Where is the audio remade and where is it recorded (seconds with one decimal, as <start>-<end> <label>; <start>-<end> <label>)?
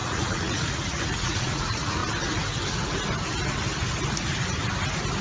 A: 0.0-2.0 remade; 2.0-5.2 recorded